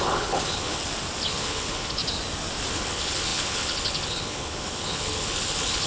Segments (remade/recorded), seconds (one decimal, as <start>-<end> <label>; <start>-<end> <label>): 0.0-0.8 remade; 0.8-1.3 recorded; 1.3-2.0 remade; 2.0-2.7 recorded; 2.7-5.9 remade